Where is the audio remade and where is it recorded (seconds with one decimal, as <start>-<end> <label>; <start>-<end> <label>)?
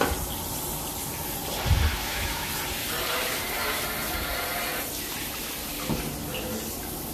0.0-1.9 recorded; 1.9-2.5 remade; 2.5-7.1 recorded